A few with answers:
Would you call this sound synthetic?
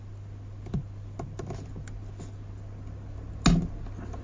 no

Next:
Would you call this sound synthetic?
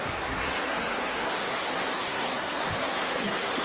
yes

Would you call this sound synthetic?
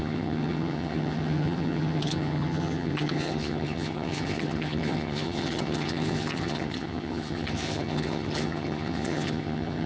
yes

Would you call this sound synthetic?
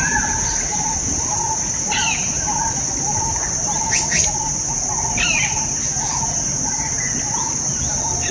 no